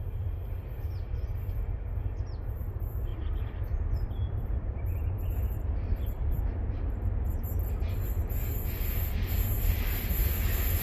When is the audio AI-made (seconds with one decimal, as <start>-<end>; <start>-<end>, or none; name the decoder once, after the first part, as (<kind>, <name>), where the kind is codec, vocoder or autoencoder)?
3.1-6.4 (vocoder, BigVGAN v2)